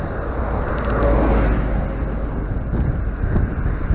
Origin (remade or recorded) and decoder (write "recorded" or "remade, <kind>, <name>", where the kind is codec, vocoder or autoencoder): recorded